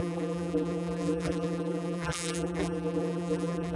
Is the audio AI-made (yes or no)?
yes